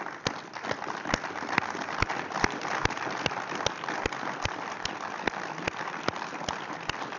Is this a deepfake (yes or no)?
no